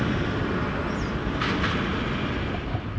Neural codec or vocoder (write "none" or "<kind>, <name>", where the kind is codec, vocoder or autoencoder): none